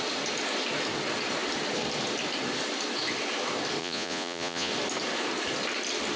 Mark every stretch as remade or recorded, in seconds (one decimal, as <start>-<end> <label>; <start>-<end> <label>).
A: 0.0-3.8 recorded; 3.8-4.7 remade; 4.7-6.2 recorded

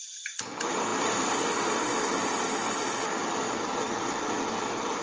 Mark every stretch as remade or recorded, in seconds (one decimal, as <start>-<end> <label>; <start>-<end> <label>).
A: 0.0-0.9 recorded; 0.9-2.7 remade; 2.7-3.2 recorded; 3.2-4.6 remade; 4.6-5.0 recorded

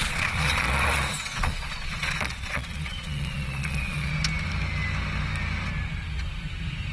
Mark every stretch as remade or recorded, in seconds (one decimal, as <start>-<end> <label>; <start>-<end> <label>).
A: 0.0-4.1 remade; 4.1-6.9 recorded

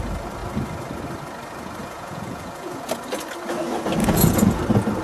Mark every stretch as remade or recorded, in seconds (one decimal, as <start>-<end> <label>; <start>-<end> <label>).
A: 0.0-1.8 recorded; 1.8-2.9 remade; 2.9-4.0 recorded; 4.0-4.6 remade; 4.6-5.0 recorded

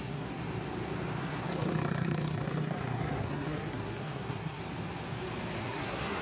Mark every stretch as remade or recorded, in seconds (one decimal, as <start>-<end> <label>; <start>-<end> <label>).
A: 0.0-0.4 remade; 0.4-1.2 recorded; 1.2-4.6 remade; 4.6-5.6 recorded; 5.6-6.2 remade

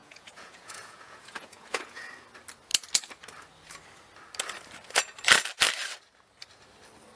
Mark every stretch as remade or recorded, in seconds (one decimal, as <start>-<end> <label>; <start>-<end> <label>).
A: 0.0-2.1 remade; 2.1-7.2 recorded